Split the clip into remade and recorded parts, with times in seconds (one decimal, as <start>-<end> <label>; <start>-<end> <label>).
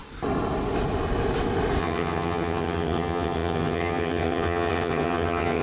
0.0-1.8 recorded; 1.8-5.6 remade